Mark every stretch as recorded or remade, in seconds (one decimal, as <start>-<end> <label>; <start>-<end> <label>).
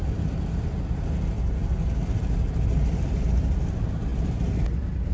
0.0-5.1 recorded